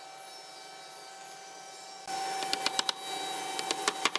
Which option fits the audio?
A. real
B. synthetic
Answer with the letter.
A